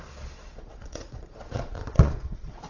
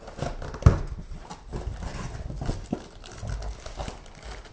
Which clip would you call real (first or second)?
second